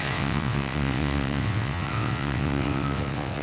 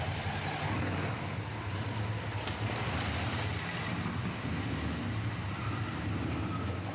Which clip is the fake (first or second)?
first